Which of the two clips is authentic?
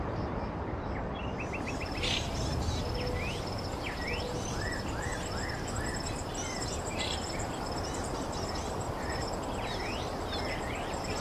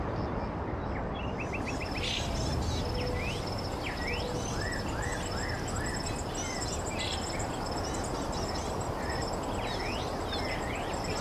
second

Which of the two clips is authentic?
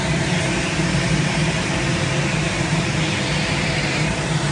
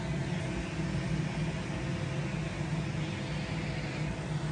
second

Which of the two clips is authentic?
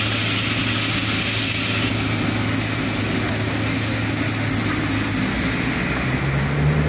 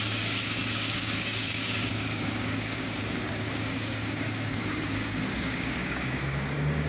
first